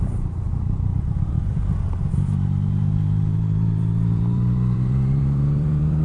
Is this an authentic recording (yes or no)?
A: no